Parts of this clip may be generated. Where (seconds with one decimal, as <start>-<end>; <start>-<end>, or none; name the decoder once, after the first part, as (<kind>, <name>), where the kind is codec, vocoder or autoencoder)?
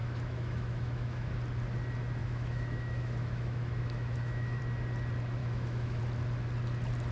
0.0-1.3 (autoencoder, DAC-VAE); 2.2-4.6; 5.4-6.0